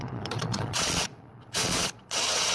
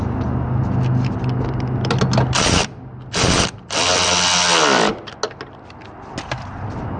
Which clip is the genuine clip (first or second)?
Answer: second